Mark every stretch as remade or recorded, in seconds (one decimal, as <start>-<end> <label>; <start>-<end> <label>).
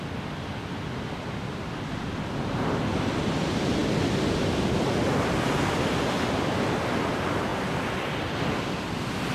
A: 0.0-9.3 recorded